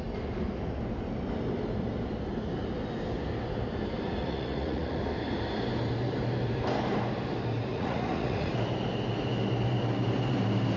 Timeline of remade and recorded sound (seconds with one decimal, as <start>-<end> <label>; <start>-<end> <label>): 0.0-4.2 recorded; 4.2-5.0 remade; 5.0-7.7 recorded; 7.7-8.5 remade; 8.5-10.8 recorded